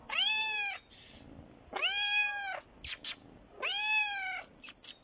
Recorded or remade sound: recorded